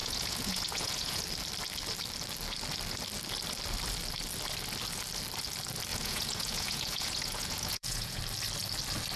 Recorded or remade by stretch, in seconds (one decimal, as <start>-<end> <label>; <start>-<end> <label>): 0.0-1.2 remade; 1.2-5.9 recorded; 5.9-8.2 remade; 8.2-9.2 recorded

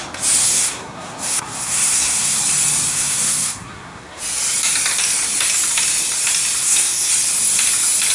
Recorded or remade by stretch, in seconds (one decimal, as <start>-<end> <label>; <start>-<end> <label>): 0.0-0.4 recorded; 0.4-2.4 remade; 2.4-2.9 recorded; 2.9-4.2 remade; 4.2-6.6 recorded; 6.6-7.1 remade; 7.1-8.1 recorded

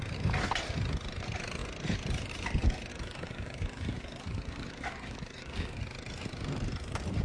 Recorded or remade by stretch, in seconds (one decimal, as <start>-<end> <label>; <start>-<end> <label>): 0.0-2.9 recorded; 2.9-5.8 remade; 5.8-7.2 recorded